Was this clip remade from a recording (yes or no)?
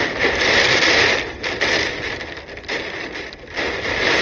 yes